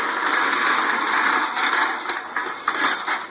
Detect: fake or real real